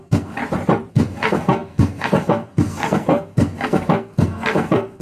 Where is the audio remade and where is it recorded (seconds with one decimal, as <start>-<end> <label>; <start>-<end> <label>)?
0.0-0.4 remade; 0.4-0.9 recorded; 0.9-5.0 remade